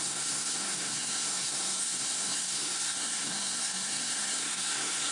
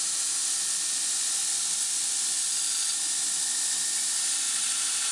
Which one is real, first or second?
second